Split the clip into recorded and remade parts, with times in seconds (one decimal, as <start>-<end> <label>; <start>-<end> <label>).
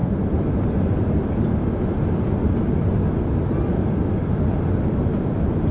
0.0-5.7 recorded